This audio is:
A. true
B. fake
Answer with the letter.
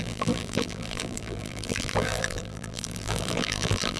B